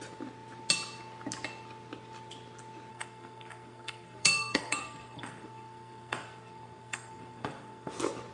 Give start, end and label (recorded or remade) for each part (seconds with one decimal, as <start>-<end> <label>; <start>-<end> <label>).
0.0-2.9 recorded; 2.9-7.9 remade; 7.9-8.3 recorded